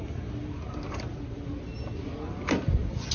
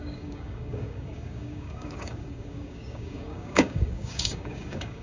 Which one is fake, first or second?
second